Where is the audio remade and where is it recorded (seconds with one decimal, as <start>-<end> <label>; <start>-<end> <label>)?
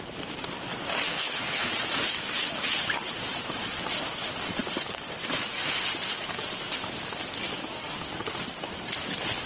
0.0-1.1 recorded; 1.1-1.7 remade; 1.7-9.5 recorded